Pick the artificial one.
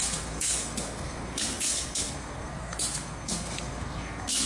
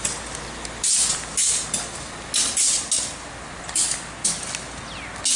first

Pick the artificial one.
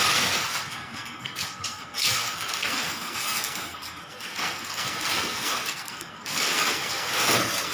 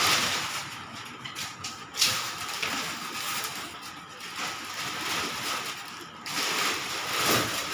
first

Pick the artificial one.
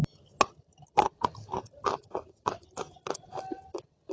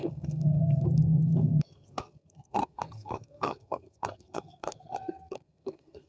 second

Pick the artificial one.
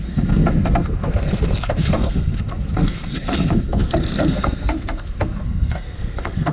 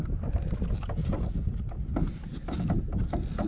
first